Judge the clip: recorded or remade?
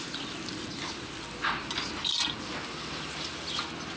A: recorded